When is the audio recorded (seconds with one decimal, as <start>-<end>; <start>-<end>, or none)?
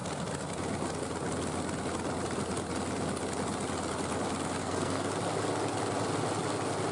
0.0-4.6; 5.1-6.9